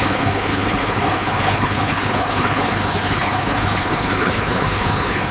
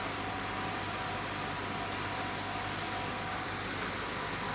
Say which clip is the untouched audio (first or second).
second